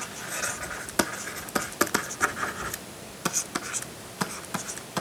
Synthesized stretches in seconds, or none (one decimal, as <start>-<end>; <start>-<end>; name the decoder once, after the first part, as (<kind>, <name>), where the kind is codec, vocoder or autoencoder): none